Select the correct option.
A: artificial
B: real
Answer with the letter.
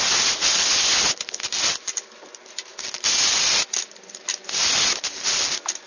B